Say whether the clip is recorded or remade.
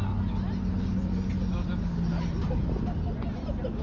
recorded